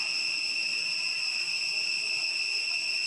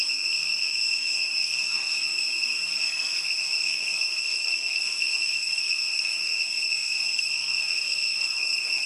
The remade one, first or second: second